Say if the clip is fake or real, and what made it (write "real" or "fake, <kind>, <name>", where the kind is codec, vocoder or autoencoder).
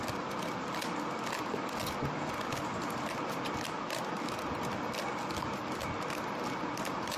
real